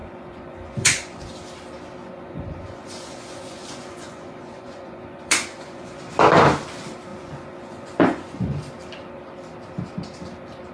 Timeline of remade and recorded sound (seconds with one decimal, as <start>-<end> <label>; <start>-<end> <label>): 0.0-1.3 remade; 1.3-2.0 recorded; 2.0-6.0 remade; 6.0-7.1 recorded; 7.1-8.6 remade; 8.6-10.7 recorded